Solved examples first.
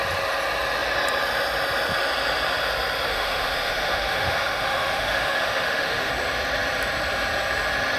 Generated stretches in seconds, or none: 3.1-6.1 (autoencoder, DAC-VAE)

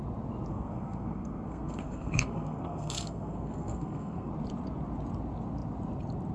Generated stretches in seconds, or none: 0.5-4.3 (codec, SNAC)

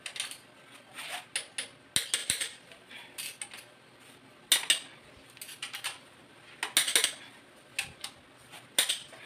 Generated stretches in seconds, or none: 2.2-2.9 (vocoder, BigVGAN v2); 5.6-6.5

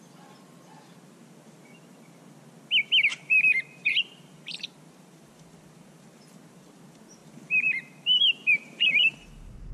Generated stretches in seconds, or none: 3.1-6.6 (vocoder, BigVGAN v2); 7.2-9.7

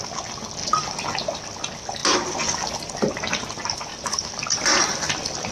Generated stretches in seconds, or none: 3.9-5.5 (vocoder, BigVGAN v2)

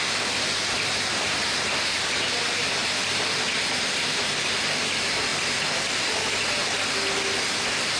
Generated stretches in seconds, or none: none

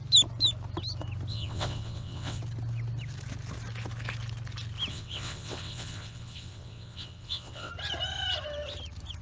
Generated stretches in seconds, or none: 1.3-2.4 (vocoder, WaveNeXt); 4.9-7.7